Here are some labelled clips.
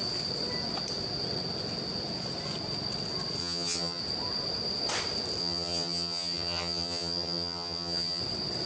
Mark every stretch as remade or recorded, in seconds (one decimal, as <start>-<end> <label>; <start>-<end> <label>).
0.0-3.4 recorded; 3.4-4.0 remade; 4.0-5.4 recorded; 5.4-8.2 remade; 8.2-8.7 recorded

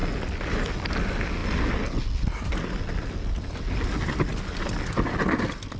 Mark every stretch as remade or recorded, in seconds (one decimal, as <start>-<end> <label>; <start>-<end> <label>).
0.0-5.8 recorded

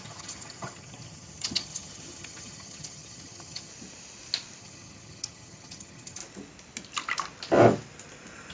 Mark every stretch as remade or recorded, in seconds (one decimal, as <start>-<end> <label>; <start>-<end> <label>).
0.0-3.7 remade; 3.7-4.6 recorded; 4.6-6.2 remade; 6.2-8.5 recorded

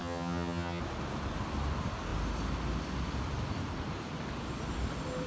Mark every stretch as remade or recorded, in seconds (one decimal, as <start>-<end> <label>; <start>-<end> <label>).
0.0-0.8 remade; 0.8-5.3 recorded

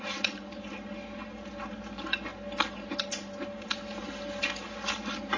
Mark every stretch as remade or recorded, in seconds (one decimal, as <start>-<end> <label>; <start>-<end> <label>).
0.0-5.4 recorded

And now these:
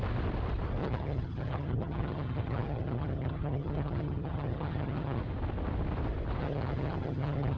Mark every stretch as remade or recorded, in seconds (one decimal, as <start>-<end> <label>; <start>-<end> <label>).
0.0-0.8 recorded; 0.8-5.2 remade; 5.2-6.4 recorded; 6.4-7.6 remade